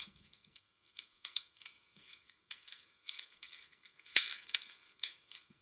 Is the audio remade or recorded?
remade